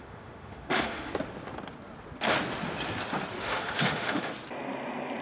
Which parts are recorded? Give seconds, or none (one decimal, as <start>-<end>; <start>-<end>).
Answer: 1.1-3.4; 4.3-5.2